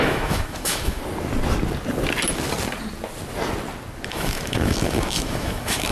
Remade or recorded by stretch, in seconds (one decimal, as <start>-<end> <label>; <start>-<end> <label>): 0.0-1.0 remade; 1.0-4.1 recorded; 4.1-5.9 remade